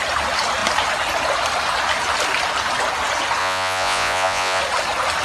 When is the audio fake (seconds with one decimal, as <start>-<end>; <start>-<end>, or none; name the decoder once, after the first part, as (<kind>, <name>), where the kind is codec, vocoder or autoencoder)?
3.4-4.6 (vocoder, Vocos)